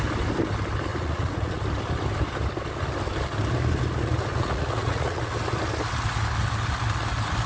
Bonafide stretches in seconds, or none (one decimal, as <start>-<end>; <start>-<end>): 0.0-0.9; 1.6-4.3; 5.2-7.5